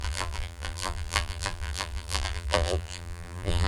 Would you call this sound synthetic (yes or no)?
yes